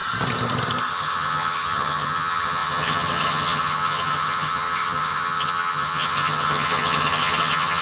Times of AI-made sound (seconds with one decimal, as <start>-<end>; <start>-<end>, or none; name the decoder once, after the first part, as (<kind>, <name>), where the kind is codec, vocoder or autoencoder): 0.9-7.8 (vocoder, HiFi-GAN)